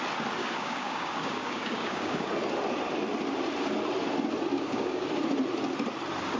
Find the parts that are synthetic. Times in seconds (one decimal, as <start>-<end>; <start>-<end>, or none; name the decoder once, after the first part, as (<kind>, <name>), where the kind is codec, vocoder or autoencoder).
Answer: 0.4-2.3 (codec, DAC); 4.5-5.1